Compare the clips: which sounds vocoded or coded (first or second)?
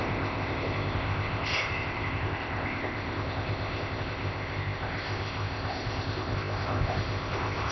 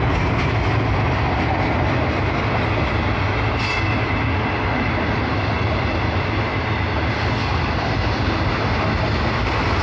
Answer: first